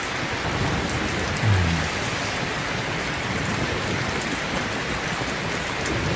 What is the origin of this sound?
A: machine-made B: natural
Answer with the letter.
B